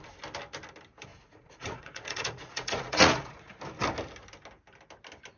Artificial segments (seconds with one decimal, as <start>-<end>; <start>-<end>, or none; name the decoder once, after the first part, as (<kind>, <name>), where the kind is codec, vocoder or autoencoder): 1.1-3.6 (vocoder, Vocos)